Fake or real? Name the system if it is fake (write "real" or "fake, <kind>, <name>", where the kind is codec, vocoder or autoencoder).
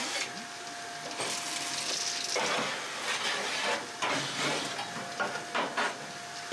real